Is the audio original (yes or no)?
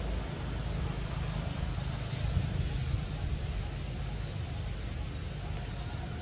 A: yes